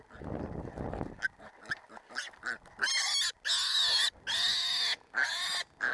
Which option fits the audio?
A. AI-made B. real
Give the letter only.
B